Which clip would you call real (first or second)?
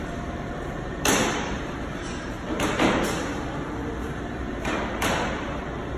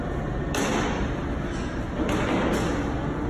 second